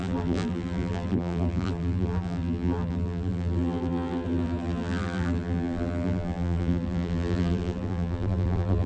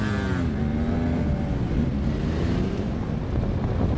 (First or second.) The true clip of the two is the second